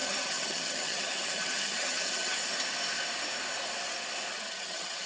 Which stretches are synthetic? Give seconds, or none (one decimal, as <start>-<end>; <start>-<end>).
0.0-2.4; 4.3-5.1